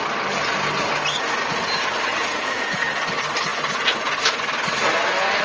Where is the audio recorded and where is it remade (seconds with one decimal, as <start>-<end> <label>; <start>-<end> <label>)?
0.0-2.1 recorded; 2.1-2.8 remade; 2.8-3.5 recorded; 3.5-4.4 remade; 4.4-5.4 recorded